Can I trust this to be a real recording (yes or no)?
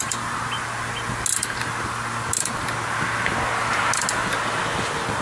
yes